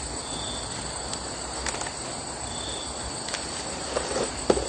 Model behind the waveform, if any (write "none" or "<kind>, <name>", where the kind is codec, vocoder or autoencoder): none